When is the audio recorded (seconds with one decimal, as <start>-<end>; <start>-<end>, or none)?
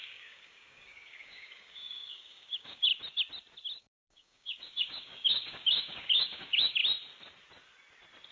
2.9-3.8; 6.8-8.3